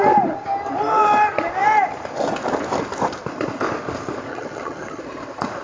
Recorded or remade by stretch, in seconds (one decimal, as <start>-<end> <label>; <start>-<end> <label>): 0.0-4.3 recorded; 4.3-5.0 remade; 5.0-5.6 recorded